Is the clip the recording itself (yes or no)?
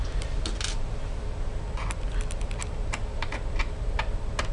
yes